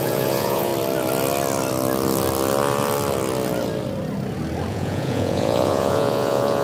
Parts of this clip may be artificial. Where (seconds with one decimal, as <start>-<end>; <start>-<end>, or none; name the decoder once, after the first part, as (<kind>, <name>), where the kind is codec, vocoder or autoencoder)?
0.0-0.7 (vocoder, Vocos); 4.7-6.6